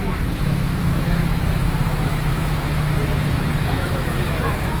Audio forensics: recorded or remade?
remade